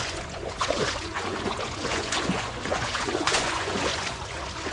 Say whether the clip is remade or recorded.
remade